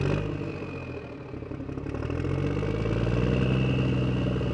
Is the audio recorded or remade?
recorded